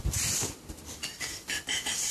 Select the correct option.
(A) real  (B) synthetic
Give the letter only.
A